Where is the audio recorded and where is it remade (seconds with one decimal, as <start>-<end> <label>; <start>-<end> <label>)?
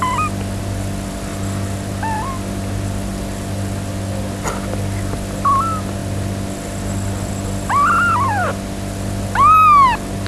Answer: 0.0-10.3 recorded